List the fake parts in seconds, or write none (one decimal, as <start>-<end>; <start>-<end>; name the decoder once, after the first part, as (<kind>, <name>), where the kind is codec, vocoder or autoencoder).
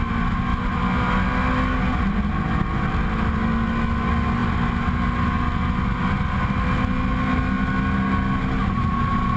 none